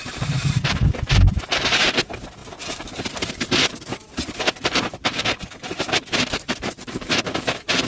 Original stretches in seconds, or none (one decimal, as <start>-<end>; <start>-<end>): none